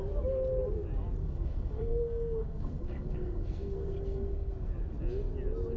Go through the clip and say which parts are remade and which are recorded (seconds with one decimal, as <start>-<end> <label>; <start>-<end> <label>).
0.0-1.2 recorded; 1.2-4.7 remade; 4.7-5.8 recorded